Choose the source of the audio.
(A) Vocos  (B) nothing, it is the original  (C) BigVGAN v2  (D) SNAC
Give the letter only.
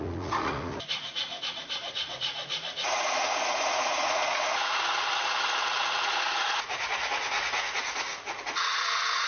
A